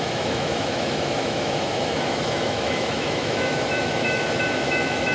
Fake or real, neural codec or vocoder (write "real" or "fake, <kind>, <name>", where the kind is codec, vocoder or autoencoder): fake, autoencoder, DAC-VAE